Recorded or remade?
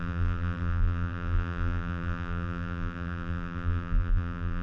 remade